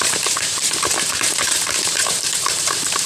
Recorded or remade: remade